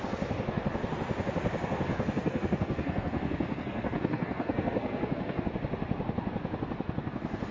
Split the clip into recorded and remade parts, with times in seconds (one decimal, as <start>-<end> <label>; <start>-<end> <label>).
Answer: 0.0-1.9 recorded; 1.9-5.4 remade; 5.4-7.5 recorded